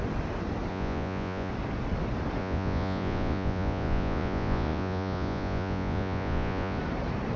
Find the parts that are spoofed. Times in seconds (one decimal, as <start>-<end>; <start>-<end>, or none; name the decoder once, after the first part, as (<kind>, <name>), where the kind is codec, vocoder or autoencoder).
0.7-1.5 (vocoder, Vocos); 2.4-6.8